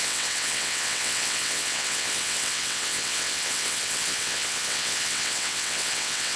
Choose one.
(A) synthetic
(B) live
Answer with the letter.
A